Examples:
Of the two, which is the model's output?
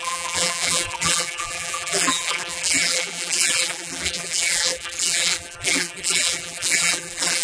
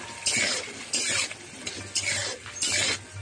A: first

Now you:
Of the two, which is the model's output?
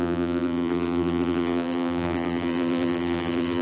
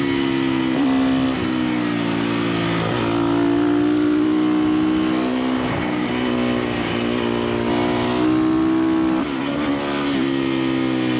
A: first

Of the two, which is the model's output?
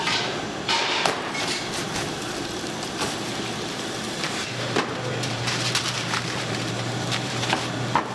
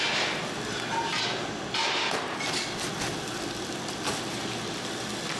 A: first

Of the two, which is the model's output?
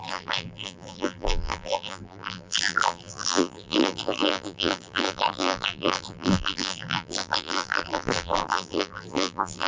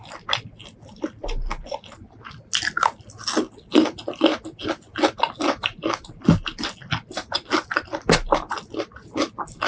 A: first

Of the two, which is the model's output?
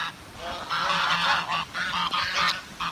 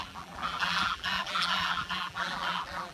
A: second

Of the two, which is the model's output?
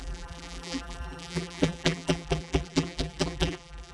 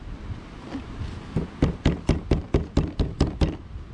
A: first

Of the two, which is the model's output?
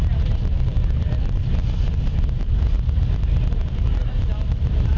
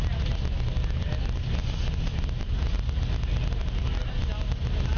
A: first